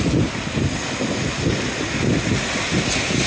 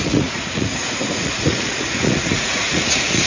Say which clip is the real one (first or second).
first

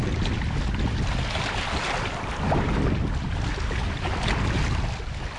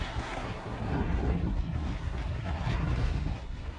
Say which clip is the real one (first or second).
first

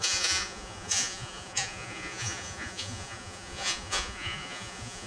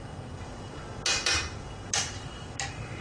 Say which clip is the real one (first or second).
second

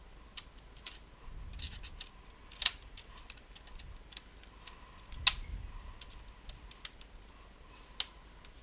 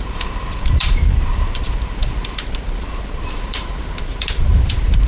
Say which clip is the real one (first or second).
first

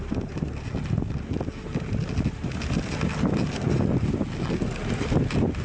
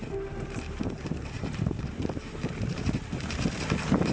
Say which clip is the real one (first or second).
first